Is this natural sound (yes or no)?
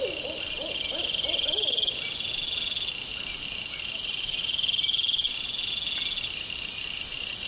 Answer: yes